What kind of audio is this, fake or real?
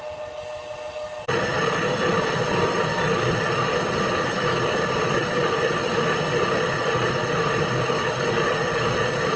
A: real